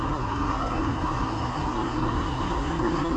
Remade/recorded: remade